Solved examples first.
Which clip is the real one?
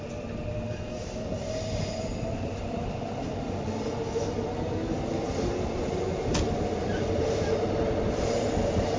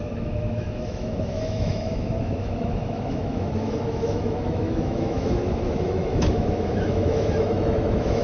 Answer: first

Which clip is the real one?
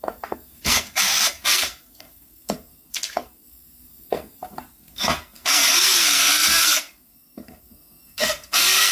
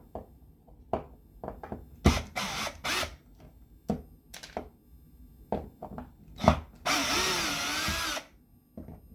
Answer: second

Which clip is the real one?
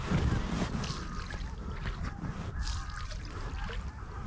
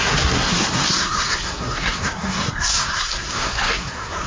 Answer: first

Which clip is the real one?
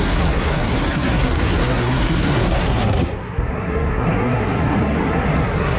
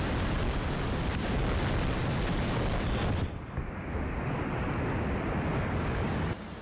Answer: second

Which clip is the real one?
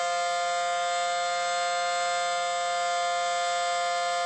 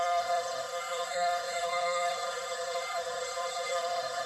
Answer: first